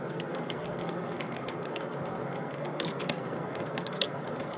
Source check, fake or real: fake